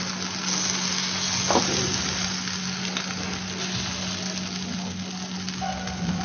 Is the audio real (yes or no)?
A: yes